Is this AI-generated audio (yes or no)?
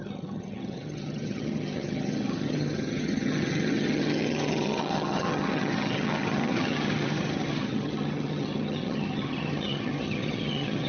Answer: yes